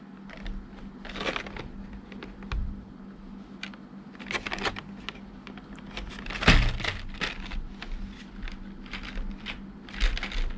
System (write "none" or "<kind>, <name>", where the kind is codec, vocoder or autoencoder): none